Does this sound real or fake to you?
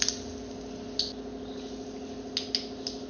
real